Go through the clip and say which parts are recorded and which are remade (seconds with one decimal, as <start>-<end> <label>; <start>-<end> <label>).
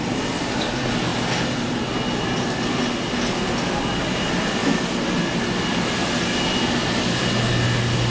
0.0-8.1 recorded